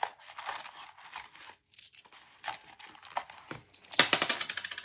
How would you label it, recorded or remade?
recorded